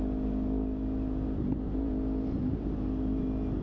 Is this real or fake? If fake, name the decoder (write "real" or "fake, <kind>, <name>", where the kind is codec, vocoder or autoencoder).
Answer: real